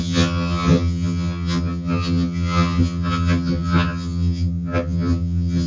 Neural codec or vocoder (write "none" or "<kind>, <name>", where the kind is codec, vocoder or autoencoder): vocoder, HiFi-GAN